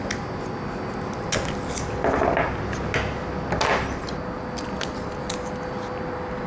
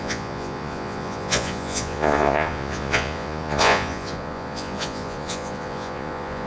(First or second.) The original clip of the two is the first